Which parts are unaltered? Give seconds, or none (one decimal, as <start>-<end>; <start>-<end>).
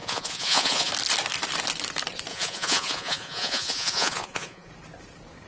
0.9-2.3; 4.7-5.5